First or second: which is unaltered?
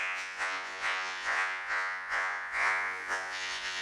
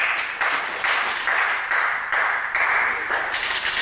second